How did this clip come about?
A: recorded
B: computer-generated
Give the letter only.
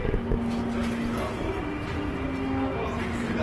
A